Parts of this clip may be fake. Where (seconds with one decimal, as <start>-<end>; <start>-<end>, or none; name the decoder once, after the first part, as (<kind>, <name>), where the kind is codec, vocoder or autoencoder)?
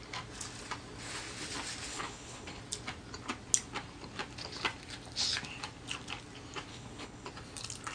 1.9-2.6 (codec, HILCodec); 6.7-7.3